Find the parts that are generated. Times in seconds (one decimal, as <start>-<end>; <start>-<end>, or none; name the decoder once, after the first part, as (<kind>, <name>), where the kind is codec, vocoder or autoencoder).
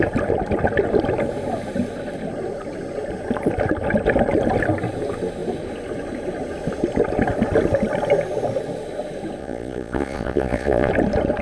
9.4-10.9 (vocoder, Vocos)